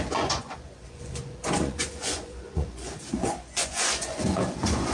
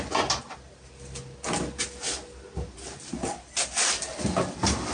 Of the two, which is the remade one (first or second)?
first